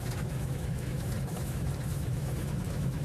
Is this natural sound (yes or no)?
no